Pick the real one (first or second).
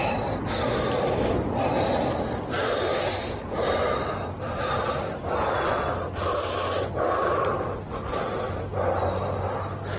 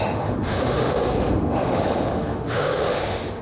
first